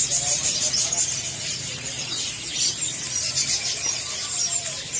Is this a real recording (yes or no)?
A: no